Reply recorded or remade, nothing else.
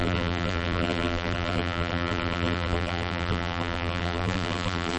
remade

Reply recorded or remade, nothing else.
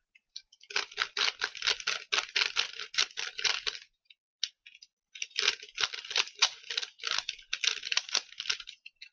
recorded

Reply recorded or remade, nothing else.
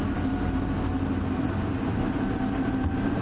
recorded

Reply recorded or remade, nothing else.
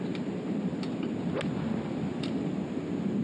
recorded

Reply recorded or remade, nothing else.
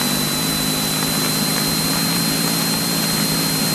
recorded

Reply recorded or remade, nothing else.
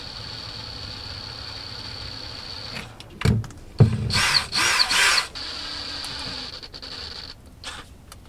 recorded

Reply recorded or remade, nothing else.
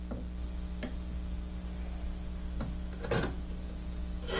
recorded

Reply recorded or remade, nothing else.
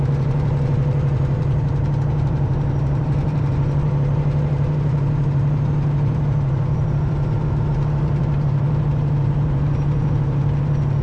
remade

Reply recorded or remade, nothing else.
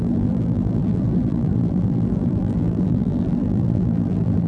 remade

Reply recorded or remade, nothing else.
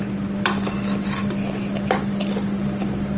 remade